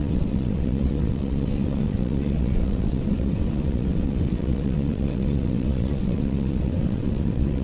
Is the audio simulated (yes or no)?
yes